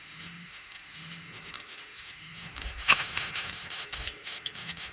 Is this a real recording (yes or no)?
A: no